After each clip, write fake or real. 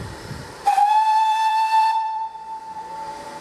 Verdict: fake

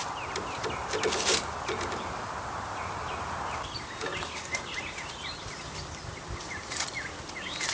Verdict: real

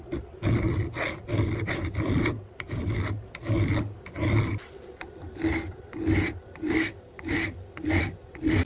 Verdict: fake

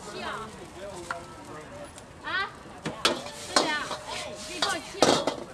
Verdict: real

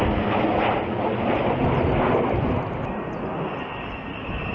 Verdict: real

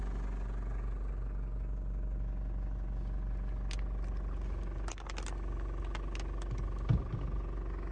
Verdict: real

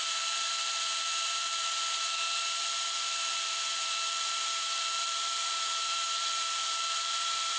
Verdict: fake